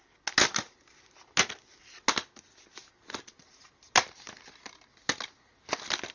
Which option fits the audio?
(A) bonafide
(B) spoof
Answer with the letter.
A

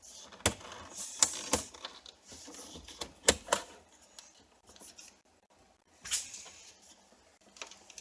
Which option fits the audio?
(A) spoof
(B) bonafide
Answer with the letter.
B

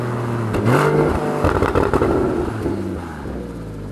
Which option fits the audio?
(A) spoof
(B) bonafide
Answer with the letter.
B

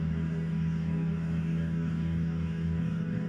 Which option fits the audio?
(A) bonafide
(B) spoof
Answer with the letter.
B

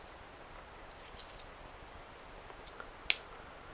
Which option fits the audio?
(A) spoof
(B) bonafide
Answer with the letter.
B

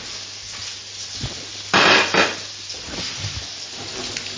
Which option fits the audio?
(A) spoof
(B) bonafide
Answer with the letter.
B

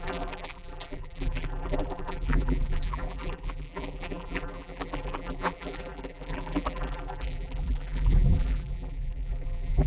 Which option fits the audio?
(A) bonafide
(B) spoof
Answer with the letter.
B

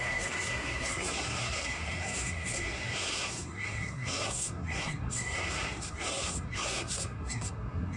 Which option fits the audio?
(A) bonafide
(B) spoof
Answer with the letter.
B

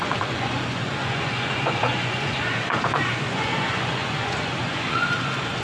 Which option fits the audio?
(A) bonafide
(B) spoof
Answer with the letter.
B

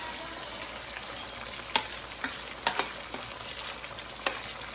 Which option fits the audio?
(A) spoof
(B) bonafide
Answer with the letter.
B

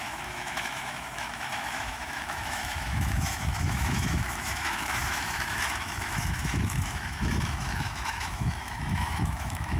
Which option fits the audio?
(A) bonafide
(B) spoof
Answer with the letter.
B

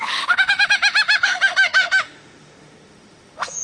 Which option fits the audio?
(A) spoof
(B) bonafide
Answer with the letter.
A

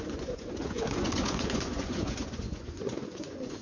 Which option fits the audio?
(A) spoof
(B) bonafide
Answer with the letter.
A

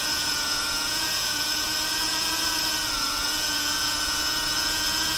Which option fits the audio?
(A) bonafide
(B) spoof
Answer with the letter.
B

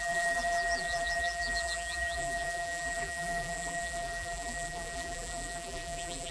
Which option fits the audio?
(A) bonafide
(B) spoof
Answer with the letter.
B